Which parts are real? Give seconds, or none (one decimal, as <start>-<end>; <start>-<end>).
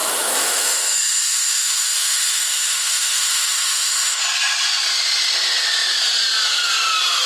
4.2-7.3